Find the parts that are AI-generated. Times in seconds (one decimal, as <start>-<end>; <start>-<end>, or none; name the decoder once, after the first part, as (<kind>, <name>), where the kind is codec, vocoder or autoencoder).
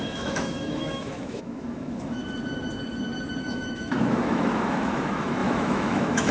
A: 0.0-2.2 (autoencoder, DAC-VAE); 3.4-6.3